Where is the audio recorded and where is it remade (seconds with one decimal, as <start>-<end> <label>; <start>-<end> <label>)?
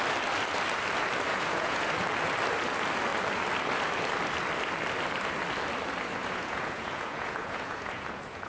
0.0-1.3 recorded; 1.3-1.9 remade; 1.9-6.2 recorded; 6.2-8.5 remade